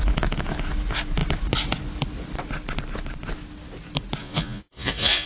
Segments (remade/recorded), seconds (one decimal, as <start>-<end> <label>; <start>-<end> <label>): 0.0-4.2 recorded; 4.2-5.3 remade